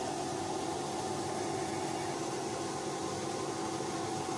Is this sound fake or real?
real